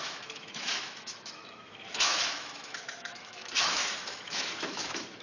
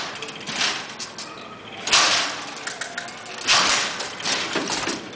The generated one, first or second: first